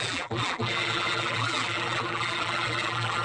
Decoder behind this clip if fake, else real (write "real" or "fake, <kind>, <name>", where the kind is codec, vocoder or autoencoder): fake, vocoder, BigVGAN v2